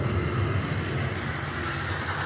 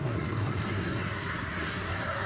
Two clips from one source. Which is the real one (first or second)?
first